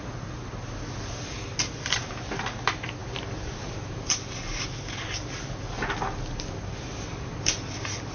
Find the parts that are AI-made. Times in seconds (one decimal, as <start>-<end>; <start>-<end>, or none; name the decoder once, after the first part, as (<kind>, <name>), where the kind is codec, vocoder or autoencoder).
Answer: none